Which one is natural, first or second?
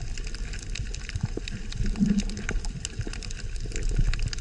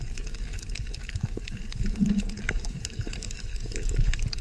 first